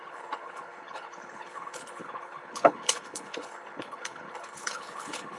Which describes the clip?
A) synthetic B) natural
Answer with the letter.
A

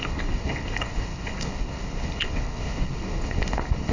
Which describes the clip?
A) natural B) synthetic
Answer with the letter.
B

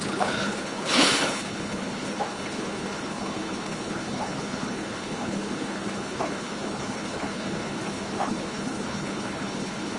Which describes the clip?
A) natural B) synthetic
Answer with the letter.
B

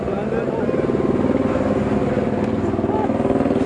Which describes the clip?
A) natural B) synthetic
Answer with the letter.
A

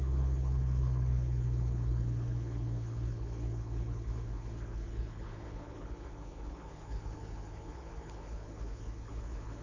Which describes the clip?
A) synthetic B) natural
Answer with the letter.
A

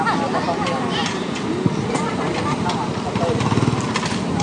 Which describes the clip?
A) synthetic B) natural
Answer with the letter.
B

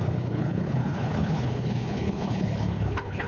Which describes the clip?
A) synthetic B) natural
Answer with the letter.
A